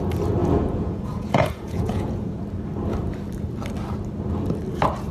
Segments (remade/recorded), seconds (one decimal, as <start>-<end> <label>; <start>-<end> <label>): 0.0-0.4 recorded; 0.4-2.4 remade; 2.4-5.1 recorded